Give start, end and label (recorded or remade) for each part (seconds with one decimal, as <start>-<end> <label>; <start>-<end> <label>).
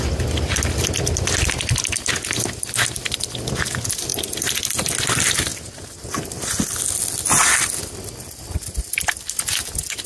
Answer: 0.0-10.1 recorded